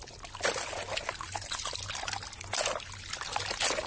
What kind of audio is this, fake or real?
real